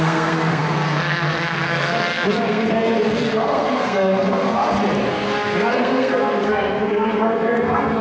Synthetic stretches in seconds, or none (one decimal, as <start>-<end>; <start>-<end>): 0.0-4.6; 5.1-8.0